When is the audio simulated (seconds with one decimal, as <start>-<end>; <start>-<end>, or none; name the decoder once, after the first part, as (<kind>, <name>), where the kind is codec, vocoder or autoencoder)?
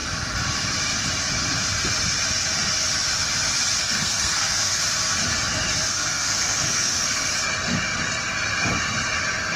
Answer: 3.8-4.8 (codec, SNAC); 5.9-7.3